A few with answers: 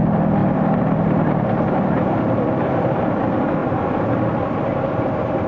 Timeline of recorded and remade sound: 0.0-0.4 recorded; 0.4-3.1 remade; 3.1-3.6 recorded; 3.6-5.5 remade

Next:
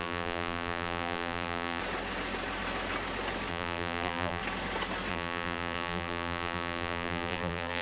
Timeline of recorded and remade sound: 0.0-1.8 remade; 1.8-3.5 recorded; 3.5-4.4 remade; 4.4-5.1 recorded; 5.1-7.8 remade

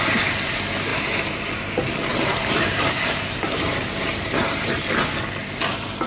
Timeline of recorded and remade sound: 0.0-0.9 recorded; 0.9-1.5 remade; 1.5-2.1 recorded; 2.1-4.8 remade; 4.8-6.1 recorded

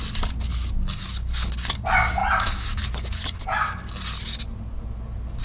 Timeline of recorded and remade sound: 0.0-2.2 recorded; 2.2-2.8 remade; 2.8-5.4 recorded

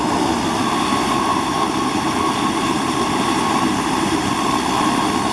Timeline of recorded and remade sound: 0.0-1.3 recorded; 1.3-4.5 remade; 4.5-5.3 recorded

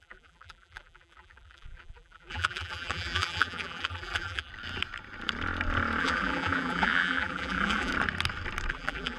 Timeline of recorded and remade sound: 0.0-4.5 remade; 4.5-6.0 recorded; 6.0-7.9 remade; 7.9-8.7 recorded; 8.7-9.2 remade

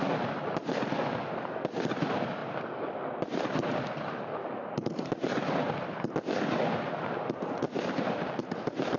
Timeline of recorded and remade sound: 0.0-2.4 recorded; 2.4-3.4 remade; 3.4-9.0 recorded

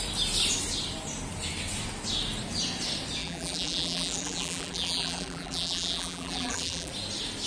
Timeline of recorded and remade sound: 0.0-3.2 recorded; 3.2-6.9 remade; 6.9-7.5 recorded